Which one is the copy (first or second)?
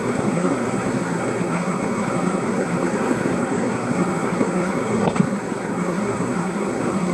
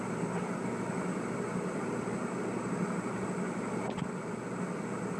first